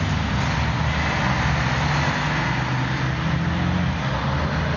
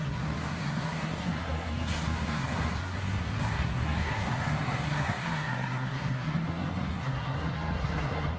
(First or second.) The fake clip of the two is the second